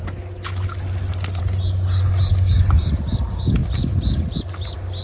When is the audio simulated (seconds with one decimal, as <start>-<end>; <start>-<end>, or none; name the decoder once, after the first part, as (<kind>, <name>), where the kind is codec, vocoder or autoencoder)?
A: none